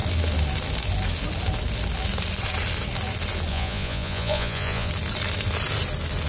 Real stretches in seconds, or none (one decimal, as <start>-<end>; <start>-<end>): 0.0-3.5; 4.9-6.3

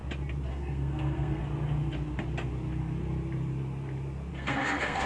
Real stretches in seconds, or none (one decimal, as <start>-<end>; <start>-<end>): 0.0-0.5; 1.4-4.3

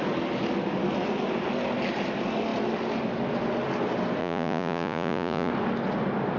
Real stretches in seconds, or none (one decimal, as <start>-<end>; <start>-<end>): 0.0-4.2; 5.5-6.4

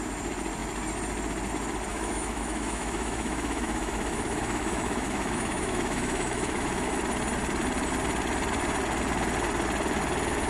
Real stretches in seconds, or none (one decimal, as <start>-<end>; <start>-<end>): 0.0-1.9; 6.9-10.5

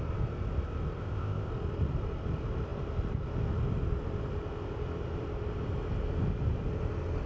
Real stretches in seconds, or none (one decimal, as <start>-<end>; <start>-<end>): 0.0-1.0; 1.5-7.3

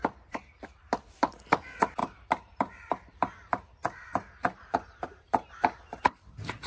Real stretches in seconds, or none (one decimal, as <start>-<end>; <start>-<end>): 0.0-2.0; 6.0-6.7